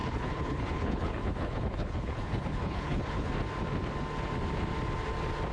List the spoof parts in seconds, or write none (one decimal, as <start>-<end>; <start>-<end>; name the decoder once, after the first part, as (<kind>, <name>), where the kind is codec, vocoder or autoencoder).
0.0-3.3 (codec, HILCodec)